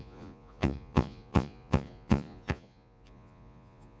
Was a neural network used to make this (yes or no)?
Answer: yes